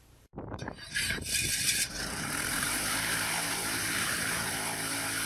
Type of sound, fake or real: fake